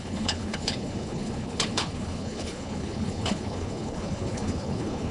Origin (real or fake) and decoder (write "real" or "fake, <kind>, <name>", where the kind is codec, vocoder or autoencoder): fake, codec, HILCodec